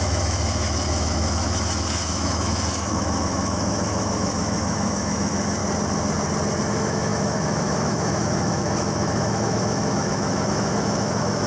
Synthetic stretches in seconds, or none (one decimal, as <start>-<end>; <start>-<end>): 0.0-5.6; 6.6-11.5